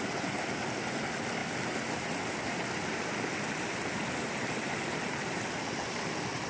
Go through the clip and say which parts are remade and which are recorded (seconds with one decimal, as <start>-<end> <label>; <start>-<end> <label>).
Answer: 0.0-6.5 recorded